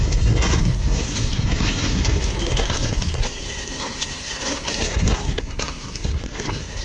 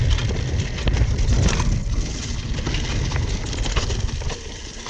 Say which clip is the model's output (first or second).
first